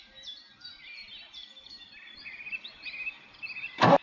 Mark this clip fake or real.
fake